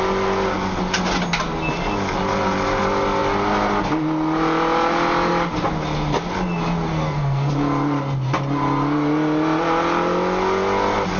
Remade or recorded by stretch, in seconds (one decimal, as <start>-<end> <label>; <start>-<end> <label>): 0.0-6.9 recorded; 6.9-7.5 remade; 7.5-11.2 recorded